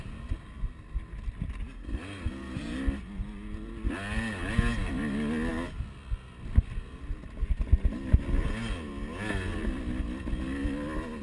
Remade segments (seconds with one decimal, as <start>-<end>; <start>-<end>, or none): none